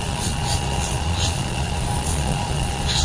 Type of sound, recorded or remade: remade